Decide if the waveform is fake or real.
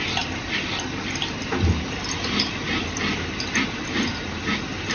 real